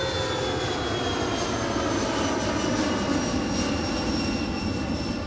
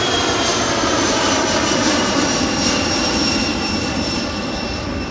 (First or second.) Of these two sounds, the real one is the first